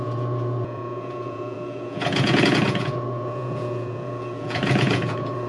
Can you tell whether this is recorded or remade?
remade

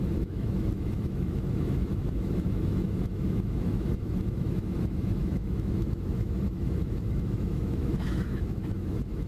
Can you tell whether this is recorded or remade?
remade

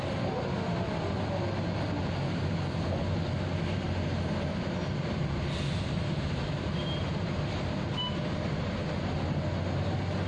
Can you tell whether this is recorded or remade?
recorded